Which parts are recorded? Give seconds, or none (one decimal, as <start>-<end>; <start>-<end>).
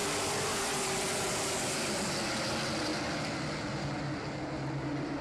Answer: 0.0-5.2